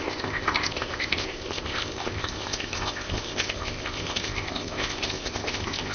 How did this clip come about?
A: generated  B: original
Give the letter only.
A